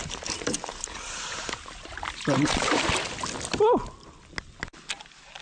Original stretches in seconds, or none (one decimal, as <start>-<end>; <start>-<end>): 3.2-5.4